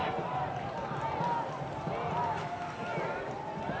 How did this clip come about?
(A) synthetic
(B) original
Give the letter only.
B